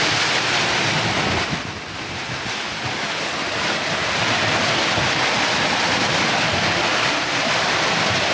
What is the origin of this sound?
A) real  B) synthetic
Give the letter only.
A